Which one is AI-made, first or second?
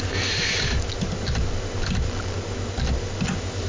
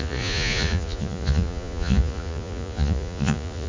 second